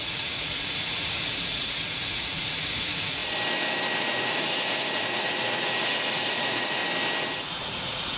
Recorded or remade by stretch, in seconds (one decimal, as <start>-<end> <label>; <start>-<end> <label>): 0.0-3.2 remade; 3.2-4.0 recorded; 4.0-6.8 remade; 6.8-7.4 recorded; 7.4-8.2 remade